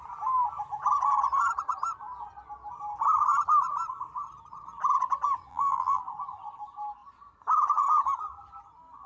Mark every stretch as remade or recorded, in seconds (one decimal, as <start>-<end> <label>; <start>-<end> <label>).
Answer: 0.0-5.5 recorded; 5.5-6.0 remade; 6.0-9.1 recorded